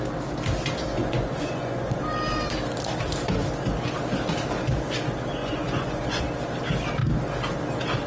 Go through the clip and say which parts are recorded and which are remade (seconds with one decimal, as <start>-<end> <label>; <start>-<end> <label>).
0.0-0.9 recorded; 0.9-2.0 remade; 2.0-5.4 recorded; 5.4-6.2 remade; 6.2-8.1 recorded